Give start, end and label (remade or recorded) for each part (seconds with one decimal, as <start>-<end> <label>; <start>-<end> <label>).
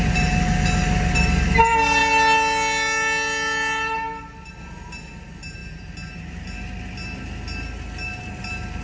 0.0-8.8 recorded